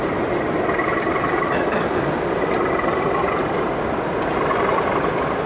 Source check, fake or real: real